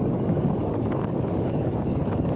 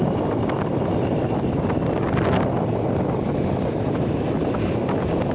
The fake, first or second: first